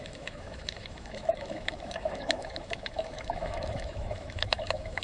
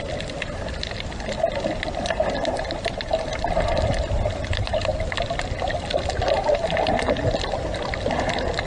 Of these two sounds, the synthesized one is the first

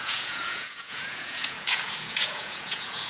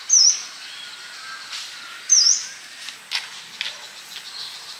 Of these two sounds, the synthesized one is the first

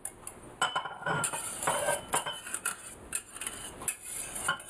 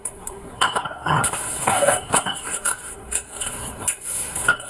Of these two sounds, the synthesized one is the second